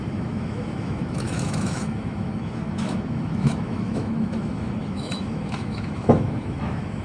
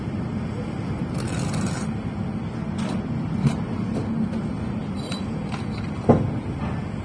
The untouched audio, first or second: second